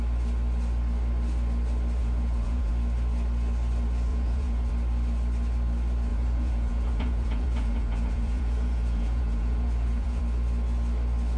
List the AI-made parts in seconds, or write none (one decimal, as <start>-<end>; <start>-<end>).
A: 2.0-2.7; 4.1-4.7; 6.1-10.2